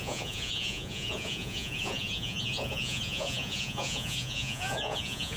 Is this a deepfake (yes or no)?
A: yes